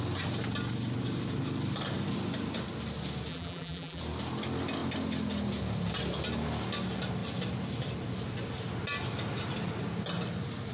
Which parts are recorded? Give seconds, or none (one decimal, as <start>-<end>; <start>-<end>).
0.0-3.3; 4.0-10.7